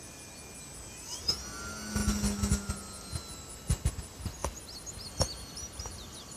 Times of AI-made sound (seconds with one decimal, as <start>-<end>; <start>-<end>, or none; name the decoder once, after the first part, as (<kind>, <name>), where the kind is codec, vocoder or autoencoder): none